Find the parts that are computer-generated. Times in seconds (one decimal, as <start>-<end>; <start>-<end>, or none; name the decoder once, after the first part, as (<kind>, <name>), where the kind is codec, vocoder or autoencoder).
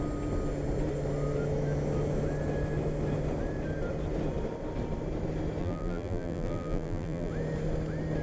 5.6-7.3 (vocoder, BigVGAN v2)